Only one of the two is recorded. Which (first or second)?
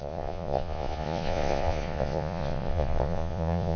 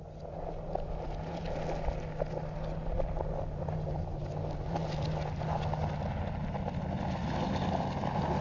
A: second